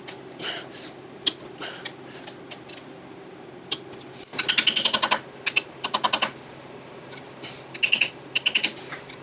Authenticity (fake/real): real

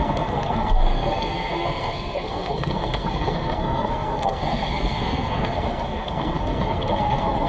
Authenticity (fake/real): fake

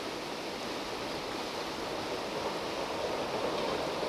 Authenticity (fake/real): real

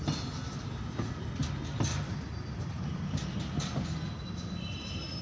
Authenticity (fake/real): real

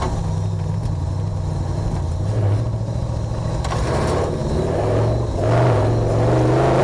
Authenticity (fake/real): real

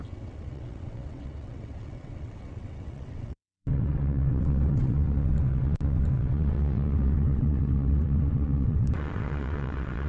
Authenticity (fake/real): fake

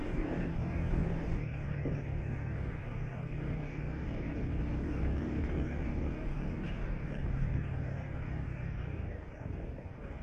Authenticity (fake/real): fake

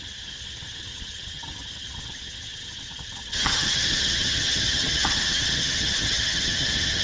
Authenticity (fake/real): fake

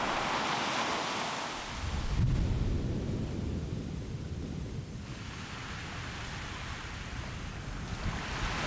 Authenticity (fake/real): real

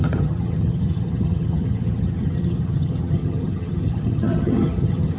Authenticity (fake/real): fake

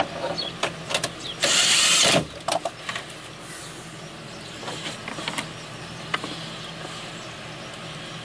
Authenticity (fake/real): real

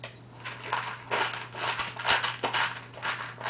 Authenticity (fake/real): real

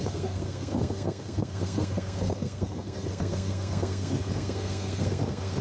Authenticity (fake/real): fake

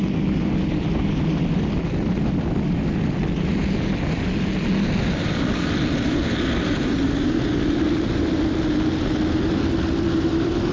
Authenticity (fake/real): real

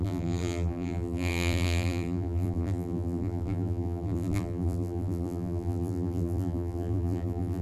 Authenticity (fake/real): fake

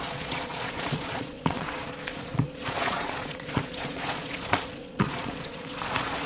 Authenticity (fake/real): fake